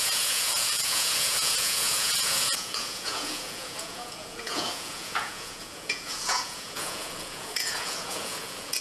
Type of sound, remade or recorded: remade